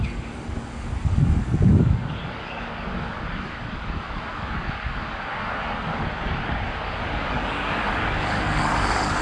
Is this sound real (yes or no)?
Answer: no